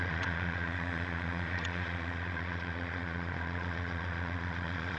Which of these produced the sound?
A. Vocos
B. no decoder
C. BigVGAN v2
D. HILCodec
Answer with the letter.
A